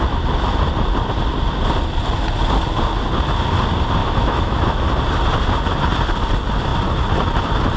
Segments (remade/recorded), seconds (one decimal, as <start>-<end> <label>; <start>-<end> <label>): 0.0-4.0 recorded; 4.0-4.8 remade; 4.8-7.8 recorded